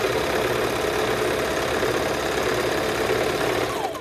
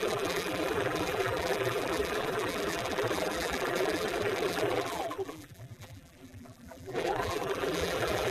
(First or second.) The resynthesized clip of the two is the second